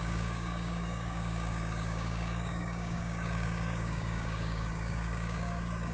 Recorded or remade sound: remade